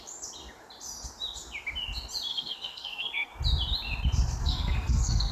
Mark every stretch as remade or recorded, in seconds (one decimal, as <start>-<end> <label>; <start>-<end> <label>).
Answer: 0.0-2.3 recorded; 2.3-3.3 remade; 3.3-4.4 recorded; 4.4-5.3 remade